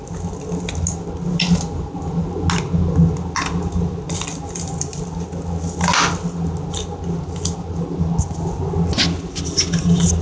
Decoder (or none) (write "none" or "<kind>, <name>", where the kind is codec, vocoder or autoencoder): none